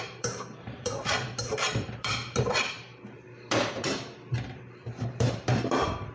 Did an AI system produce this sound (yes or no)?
yes